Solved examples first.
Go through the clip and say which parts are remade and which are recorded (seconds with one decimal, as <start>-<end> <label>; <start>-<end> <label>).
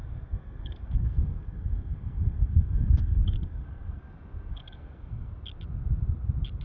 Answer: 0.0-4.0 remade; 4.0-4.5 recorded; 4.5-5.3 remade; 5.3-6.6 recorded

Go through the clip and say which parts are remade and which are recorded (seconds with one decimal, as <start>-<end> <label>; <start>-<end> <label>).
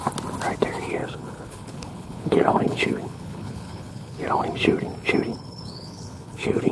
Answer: 0.0-1.0 recorded; 1.0-4.2 remade; 4.2-5.3 recorded; 5.3-6.7 remade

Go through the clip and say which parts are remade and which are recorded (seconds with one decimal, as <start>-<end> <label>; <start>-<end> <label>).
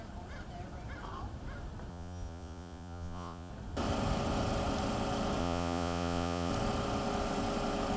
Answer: 0.0-1.9 recorded; 1.9-3.5 remade; 3.5-5.4 recorded; 5.4-6.5 remade; 6.5-8.0 recorded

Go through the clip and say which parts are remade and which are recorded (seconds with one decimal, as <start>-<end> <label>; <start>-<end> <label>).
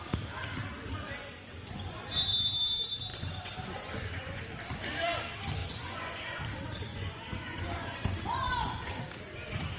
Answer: 0.0-1.2 recorded; 1.2-2.0 remade; 2.0-3.1 recorded; 3.1-4.4 remade; 4.4-5.6 recorded; 5.6-6.4 remade; 6.4-6.9 recorded; 6.9-9.0 remade; 9.0-9.8 recorded